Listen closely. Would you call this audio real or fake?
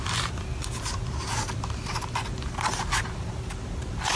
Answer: real